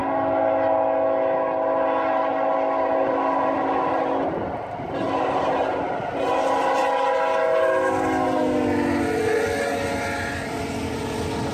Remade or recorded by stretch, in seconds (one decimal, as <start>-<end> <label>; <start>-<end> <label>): 0.0-11.5 recorded